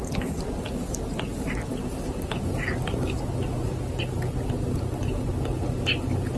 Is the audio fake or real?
real